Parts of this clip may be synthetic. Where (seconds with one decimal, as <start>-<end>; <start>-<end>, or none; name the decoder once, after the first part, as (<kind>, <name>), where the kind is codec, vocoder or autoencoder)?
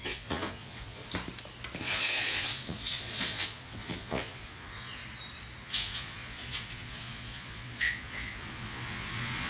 0.0-1.0 (vocoder, Vocos); 1.8-5.0; 5.6-9.5